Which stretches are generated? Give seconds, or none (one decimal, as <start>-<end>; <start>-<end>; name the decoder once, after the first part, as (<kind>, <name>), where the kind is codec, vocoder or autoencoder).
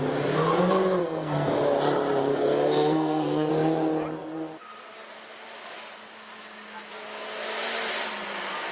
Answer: 1.0-1.6 (codec, SNAC); 2.3-3.5